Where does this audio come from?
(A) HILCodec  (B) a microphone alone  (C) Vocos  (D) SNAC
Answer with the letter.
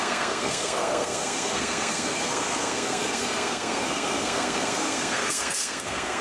D